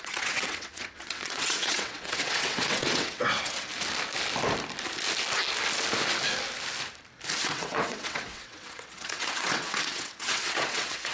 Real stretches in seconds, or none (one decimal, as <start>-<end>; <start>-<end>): 3.7-7.4